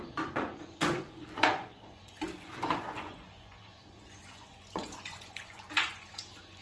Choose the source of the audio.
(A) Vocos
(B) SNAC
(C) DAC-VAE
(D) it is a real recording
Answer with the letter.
A